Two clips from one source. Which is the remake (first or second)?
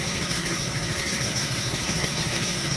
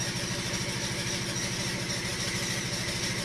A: first